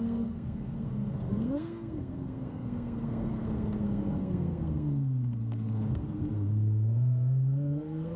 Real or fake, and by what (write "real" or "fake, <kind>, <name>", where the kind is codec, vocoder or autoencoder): fake, codec, SNAC